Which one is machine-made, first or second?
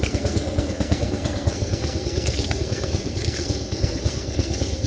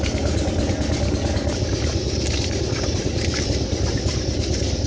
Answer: first